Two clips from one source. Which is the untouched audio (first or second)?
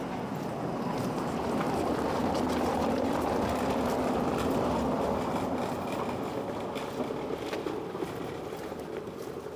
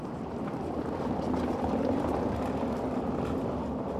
first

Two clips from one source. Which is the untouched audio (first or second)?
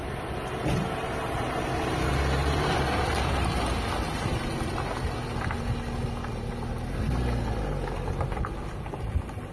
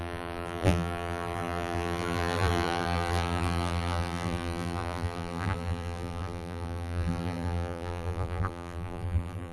first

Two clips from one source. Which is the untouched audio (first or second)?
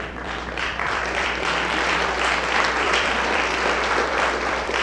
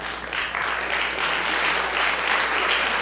second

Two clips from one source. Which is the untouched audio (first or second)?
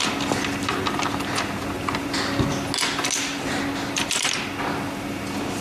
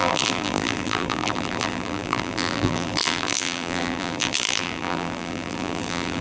first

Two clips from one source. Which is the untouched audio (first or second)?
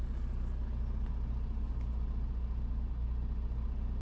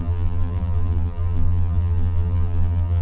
first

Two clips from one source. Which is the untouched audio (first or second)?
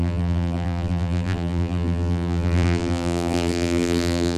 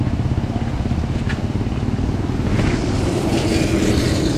second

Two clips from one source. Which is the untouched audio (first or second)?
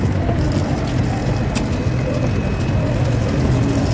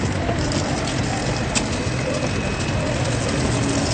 first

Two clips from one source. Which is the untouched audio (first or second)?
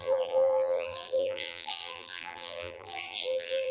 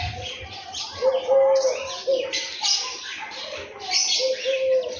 second